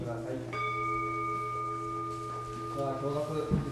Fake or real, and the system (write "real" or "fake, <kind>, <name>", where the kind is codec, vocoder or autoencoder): real